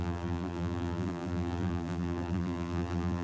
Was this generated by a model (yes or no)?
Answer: yes